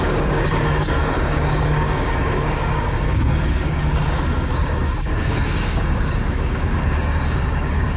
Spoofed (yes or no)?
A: yes